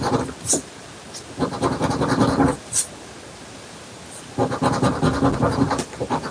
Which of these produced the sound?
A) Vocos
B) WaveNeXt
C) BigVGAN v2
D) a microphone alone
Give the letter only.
D